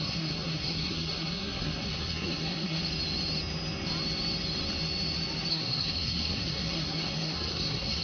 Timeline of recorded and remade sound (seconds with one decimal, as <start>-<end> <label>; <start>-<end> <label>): 0.0-2.8 remade; 2.8-5.5 recorded; 5.5-8.0 remade